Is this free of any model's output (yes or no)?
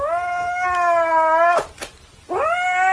yes